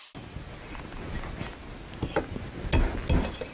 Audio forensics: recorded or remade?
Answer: recorded